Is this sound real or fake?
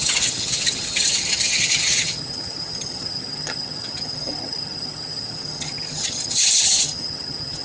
fake